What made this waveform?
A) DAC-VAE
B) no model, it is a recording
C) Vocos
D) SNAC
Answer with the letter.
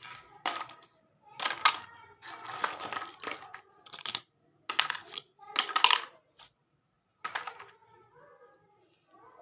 B